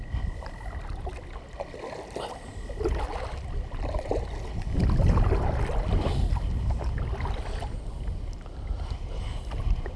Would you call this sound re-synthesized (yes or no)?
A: no